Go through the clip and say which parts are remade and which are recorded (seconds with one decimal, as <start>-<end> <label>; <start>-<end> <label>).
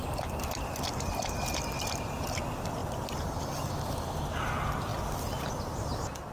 0.0-4.9 recorded; 4.9-5.6 remade; 5.6-6.3 recorded